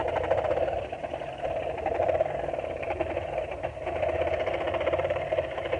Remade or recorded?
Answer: remade